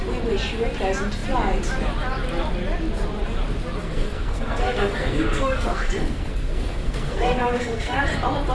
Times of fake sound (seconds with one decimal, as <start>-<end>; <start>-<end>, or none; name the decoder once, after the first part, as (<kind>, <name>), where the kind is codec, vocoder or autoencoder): 3.8-8.0 (codec, SNAC)